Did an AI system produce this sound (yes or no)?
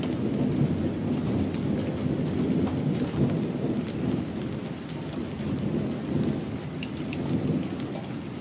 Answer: no